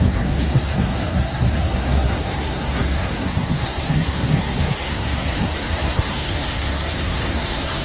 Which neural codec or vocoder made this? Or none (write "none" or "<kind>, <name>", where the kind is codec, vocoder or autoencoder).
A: codec, SNAC